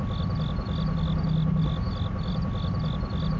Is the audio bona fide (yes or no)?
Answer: yes